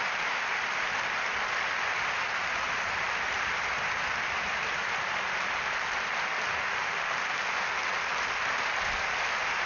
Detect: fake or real real